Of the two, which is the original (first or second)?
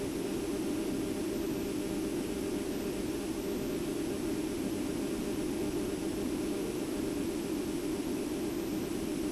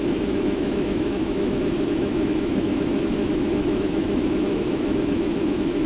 first